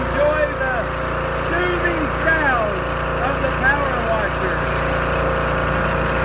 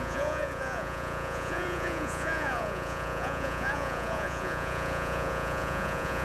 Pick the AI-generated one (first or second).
second